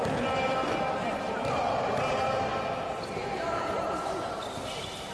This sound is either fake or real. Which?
real